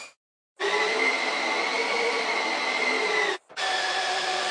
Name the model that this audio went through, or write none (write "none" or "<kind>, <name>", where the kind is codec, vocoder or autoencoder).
vocoder, BigVGAN v2